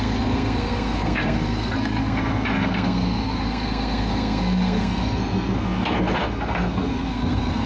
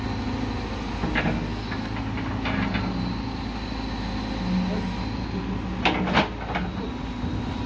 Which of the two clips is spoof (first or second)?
first